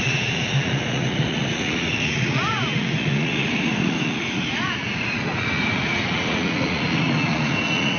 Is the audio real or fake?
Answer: fake